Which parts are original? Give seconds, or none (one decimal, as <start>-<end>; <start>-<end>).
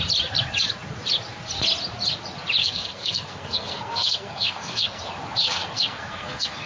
0.0-2.6; 5.0-5.4